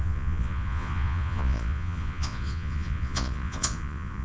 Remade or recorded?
remade